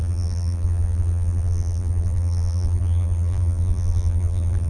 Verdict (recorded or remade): remade